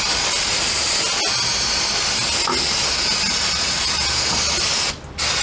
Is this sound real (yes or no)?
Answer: yes